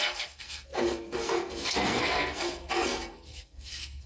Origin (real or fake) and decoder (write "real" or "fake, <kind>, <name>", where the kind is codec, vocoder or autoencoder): fake, codec, SNAC